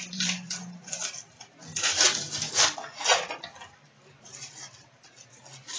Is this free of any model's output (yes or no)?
no